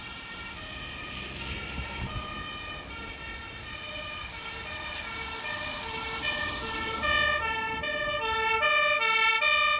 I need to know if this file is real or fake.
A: real